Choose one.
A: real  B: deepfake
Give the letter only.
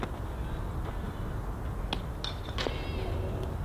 A